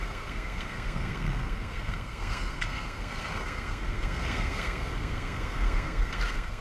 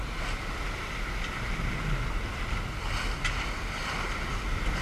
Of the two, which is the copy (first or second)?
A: first